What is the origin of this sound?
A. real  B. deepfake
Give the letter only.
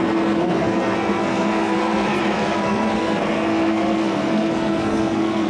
B